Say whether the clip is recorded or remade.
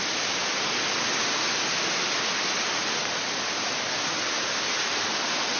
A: recorded